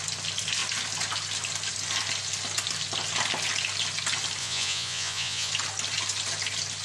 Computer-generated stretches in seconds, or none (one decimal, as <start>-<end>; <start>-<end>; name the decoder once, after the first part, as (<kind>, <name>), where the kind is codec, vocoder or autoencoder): 4.4-5.5 (vocoder, Vocos)

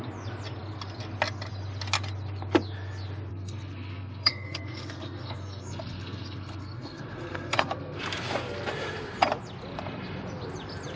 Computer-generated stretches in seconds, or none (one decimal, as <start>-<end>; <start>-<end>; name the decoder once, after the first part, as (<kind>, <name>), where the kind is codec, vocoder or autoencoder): 3.3-8.0 (codec, SNAC)